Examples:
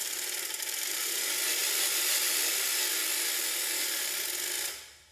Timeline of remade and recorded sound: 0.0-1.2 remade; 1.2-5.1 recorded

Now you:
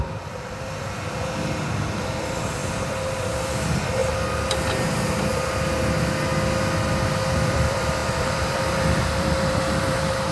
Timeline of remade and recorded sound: 0.0-2.6 remade; 2.6-3.1 recorded; 3.1-4.0 remade; 4.0-7.3 recorded; 7.3-10.3 remade